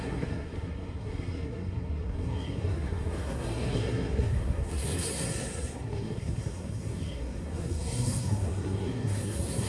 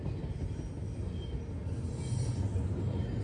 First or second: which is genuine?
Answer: second